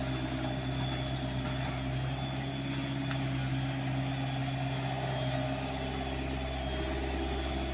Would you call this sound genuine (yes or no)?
yes